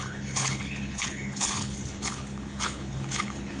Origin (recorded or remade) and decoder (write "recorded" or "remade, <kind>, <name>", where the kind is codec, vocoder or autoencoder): remade, codec, HILCodec